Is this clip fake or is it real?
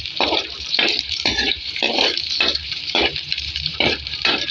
fake